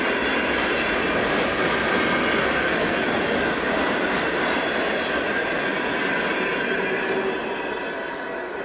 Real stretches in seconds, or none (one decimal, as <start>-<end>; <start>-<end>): 0.0-2.4; 3.1-8.6